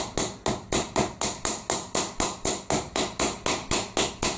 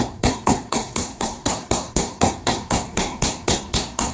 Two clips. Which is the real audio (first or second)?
first